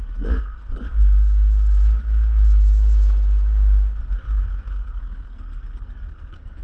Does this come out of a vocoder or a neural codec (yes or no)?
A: yes